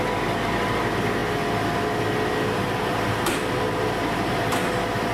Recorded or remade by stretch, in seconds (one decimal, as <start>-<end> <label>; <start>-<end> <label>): 0.0-5.1 recorded